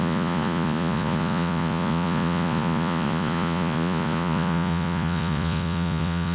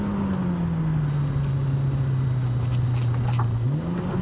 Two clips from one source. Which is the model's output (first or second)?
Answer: first